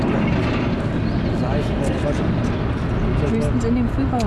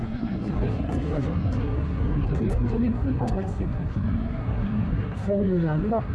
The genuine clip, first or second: first